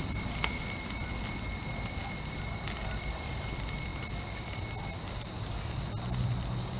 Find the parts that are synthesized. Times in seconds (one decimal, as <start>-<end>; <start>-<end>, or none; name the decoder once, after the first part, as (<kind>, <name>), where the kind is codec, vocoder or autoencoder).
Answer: none